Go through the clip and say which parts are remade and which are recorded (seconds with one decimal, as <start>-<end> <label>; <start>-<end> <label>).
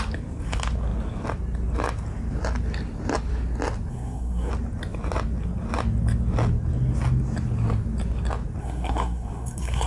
0.0-3.9 recorded; 3.9-4.5 remade; 4.5-8.6 recorded; 8.6-9.9 remade